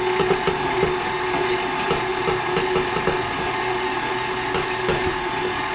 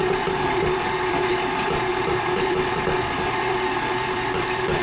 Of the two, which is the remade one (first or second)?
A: second